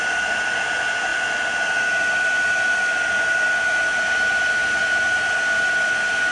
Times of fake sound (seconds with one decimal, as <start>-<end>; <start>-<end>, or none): none